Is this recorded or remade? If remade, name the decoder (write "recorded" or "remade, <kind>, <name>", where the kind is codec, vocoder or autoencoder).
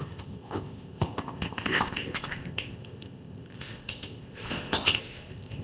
remade, codec, ZipCodec